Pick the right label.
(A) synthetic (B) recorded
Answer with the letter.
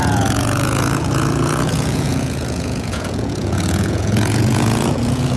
A